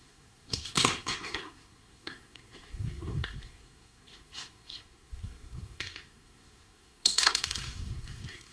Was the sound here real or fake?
fake